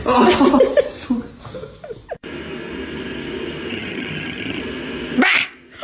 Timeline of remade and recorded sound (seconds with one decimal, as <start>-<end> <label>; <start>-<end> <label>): 0.0-3.7 recorded; 3.7-4.6 remade; 4.6-5.8 recorded